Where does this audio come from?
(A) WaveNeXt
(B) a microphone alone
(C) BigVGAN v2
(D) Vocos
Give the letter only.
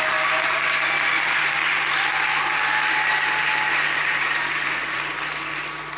B